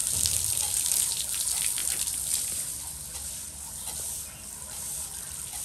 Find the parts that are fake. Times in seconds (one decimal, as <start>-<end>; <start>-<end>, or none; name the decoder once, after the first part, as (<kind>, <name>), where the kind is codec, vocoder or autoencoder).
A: 1.8-3.8 (vocoder, BigVGAN v2)